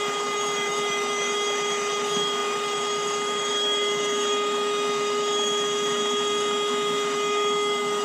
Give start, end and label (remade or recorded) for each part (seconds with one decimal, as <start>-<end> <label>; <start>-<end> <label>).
0.0-8.0 remade